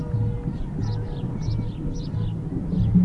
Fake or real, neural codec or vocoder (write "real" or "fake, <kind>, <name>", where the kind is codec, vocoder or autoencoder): real